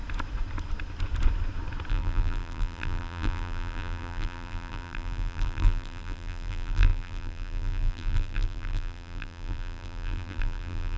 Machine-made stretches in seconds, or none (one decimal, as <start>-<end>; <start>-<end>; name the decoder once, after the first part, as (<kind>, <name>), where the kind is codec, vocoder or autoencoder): 1.9-11.0 (vocoder, BigVGAN v2)